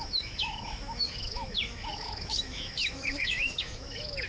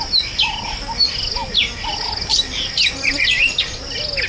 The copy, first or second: first